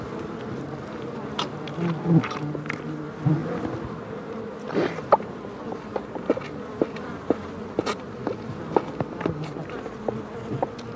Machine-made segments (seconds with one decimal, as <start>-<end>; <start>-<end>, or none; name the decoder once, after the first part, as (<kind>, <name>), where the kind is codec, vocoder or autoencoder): none